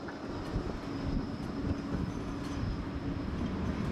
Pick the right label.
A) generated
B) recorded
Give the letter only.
B